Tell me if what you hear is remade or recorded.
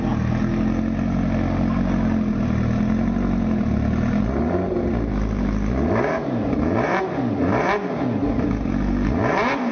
recorded